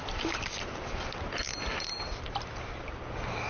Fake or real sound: real